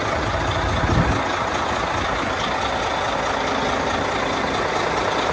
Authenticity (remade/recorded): recorded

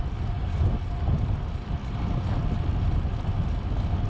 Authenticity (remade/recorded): recorded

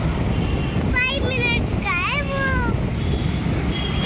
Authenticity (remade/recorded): recorded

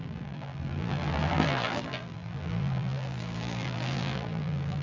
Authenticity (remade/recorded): remade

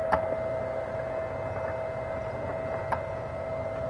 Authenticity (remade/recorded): recorded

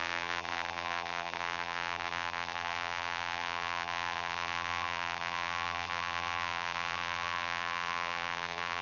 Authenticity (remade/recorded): remade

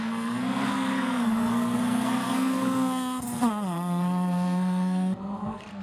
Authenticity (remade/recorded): remade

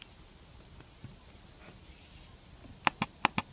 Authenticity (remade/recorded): recorded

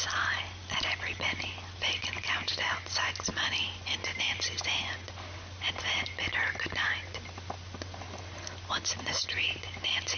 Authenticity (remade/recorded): recorded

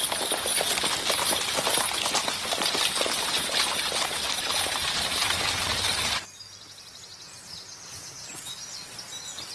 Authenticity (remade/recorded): recorded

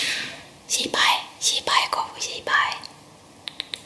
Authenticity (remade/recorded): recorded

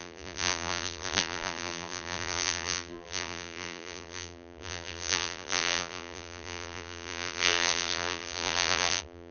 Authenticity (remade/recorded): remade